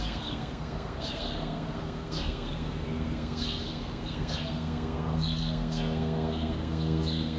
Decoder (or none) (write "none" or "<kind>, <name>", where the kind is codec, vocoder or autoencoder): codec, SNAC